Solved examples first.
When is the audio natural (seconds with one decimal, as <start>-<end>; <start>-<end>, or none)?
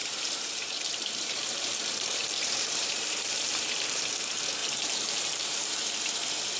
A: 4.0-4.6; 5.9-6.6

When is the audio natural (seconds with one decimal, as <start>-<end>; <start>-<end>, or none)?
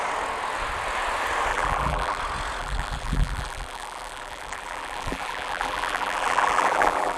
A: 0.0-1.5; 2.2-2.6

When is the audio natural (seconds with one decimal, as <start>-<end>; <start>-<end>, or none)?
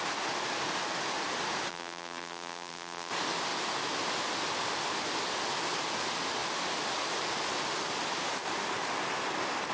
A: 0.0-1.7; 3.1-9.7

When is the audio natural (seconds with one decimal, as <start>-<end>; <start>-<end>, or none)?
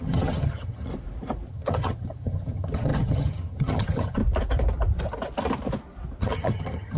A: 0.9-1.5; 4.2-6.2